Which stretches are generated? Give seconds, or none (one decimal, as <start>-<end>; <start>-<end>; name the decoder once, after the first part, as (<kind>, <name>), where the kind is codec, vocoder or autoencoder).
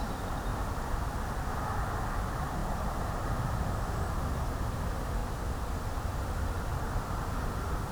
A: 0.0-0.5 (vocoder, BigVGAN v2); 2.2-5.2; 5.8-7.9